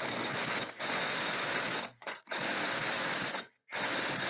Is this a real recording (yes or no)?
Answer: no